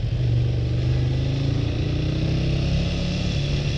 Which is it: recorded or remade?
recorded